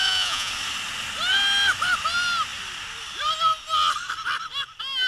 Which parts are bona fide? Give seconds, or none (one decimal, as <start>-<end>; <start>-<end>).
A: 0.5-5.1